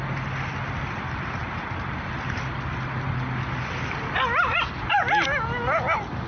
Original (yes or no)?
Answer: yes